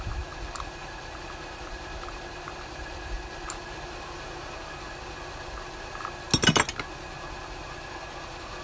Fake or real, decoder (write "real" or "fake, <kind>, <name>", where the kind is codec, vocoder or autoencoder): real